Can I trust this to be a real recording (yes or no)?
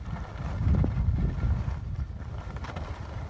yes